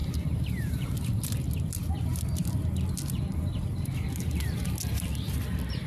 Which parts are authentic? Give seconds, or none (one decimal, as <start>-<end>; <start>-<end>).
1.3-5.9